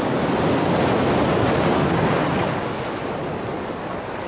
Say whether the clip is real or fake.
real